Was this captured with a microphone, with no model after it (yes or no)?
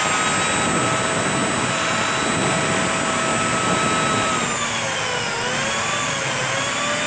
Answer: yes